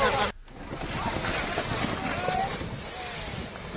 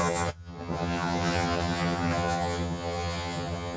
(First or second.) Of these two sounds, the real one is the first